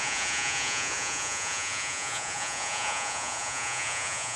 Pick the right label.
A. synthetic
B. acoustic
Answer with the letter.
A